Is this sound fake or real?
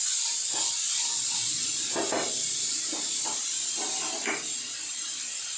real